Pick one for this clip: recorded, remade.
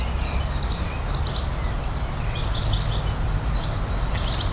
recorded